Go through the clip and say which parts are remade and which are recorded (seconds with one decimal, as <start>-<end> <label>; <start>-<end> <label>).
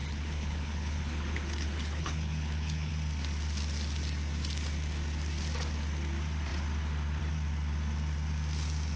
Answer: 0.0-2.9 remade; 2.9-9.0 recorded